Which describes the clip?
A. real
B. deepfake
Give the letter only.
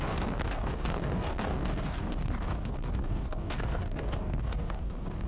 B